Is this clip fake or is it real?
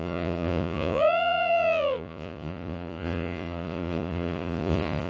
fake